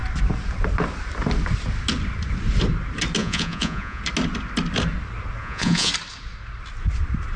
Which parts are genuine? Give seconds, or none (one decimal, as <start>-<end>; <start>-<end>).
0.0-3.2; 4.0-5.4; 5.9-7.4